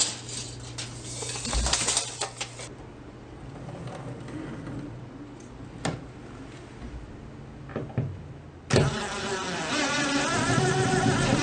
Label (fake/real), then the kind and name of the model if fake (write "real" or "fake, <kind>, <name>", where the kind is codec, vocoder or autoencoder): real